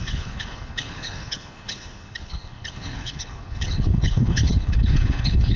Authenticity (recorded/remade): remade